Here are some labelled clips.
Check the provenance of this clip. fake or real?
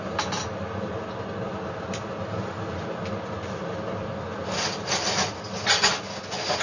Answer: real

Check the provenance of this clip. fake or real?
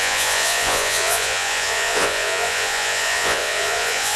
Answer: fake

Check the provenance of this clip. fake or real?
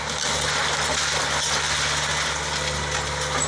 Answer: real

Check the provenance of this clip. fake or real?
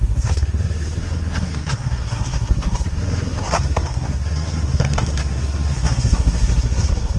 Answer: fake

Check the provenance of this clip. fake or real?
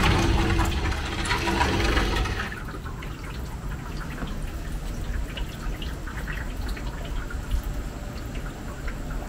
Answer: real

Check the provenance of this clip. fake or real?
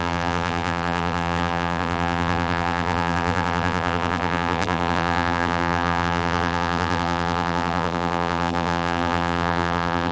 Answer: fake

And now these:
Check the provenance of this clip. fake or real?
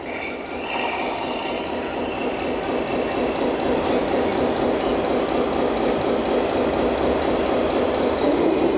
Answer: real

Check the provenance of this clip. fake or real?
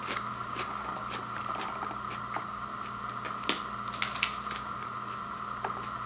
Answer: real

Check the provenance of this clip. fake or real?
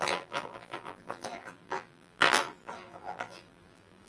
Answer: fake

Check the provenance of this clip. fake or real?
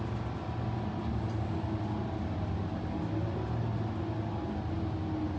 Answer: real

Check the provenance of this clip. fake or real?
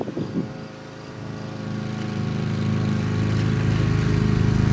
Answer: real